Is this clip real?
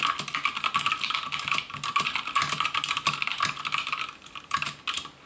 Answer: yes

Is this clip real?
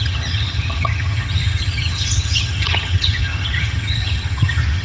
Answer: no